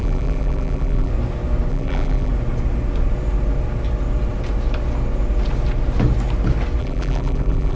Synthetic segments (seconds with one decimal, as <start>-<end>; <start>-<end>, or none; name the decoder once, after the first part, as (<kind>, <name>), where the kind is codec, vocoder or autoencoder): 0.0-1.1 (vocoder, BigVGAN v2); 1.7-2.3; 6.8-7.8